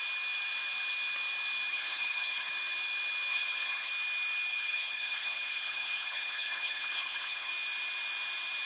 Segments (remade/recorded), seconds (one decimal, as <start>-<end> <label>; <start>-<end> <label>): 0.0-1.7 recorded; 1.7-2.5 remade; 2.5-3.3 recorded; 3.3-3.9 remade; 3.9-4.5 recorded; 4.5-7.5 remade; 7.5-8.7 recorded

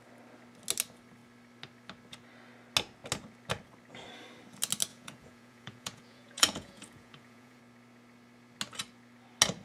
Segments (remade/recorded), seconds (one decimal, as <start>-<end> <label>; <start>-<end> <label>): 0.0-4.9 recorded; 4.9-7.6 remade; 7.6-9.6 recorded

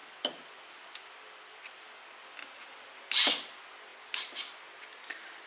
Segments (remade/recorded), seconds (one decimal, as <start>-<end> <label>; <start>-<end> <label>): 0.0-5.5 recorded

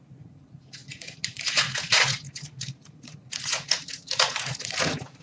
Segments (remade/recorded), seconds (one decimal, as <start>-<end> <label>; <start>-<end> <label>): 0.0-5.2 remade

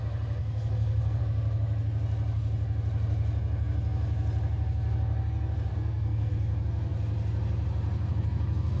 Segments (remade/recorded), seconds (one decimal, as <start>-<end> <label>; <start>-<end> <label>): 0.0-0.4 recorded; 0.4-1.2 remade; 1.2-5.7 recorded; 5.7-6.3 remade; 6.3-8.8 recorded